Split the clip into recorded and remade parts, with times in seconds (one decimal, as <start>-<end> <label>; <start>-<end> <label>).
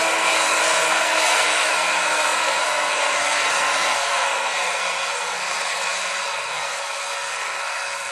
0.0-8.1 remade